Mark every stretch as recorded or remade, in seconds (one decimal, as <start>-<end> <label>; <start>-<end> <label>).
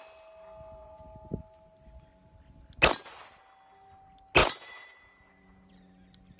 0.0-0.8 recorded; 0.8-1.4 remade; 1.4-4.4 recorded; 4.4-5.7 remade; 5.7-6.4 recorded